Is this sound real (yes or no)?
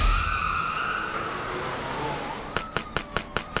yes